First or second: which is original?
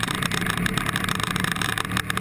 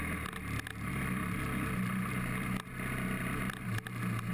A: second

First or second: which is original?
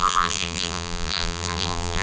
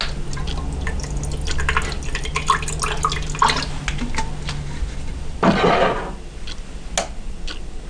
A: second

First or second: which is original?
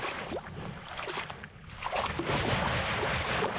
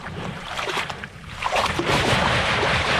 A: first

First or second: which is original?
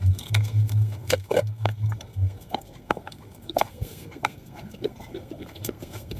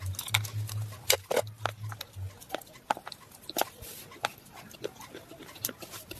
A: second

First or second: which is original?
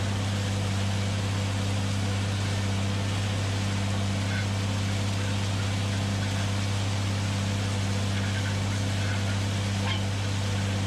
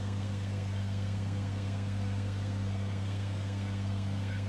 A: first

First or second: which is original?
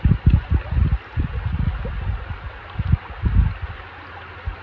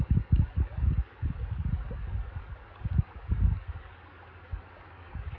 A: first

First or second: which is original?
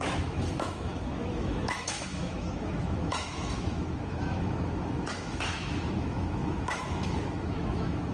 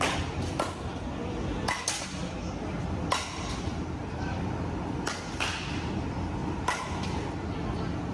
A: second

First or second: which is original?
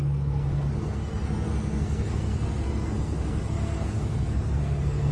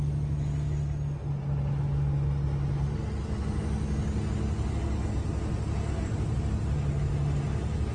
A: second